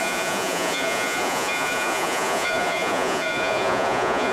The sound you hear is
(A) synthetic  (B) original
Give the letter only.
A